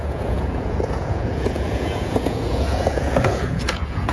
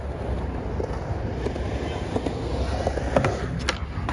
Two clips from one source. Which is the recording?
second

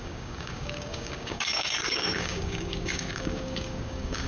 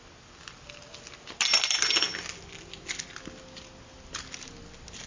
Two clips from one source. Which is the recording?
second